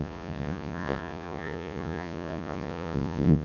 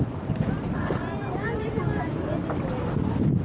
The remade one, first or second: first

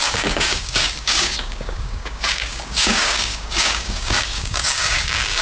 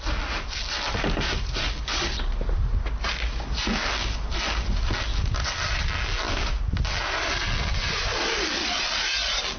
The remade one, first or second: first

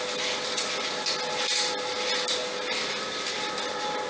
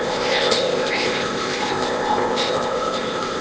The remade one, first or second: second